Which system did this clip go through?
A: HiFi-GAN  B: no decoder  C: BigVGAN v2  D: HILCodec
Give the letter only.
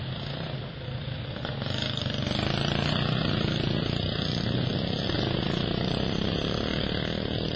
B